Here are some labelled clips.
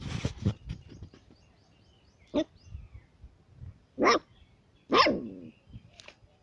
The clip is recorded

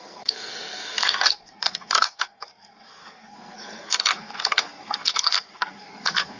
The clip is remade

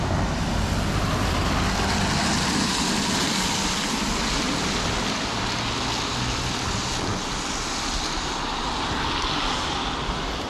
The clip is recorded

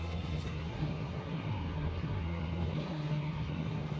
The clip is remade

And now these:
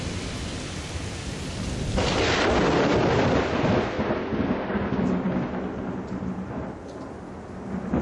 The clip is recorded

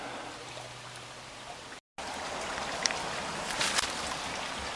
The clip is recorded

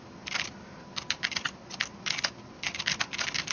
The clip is recorded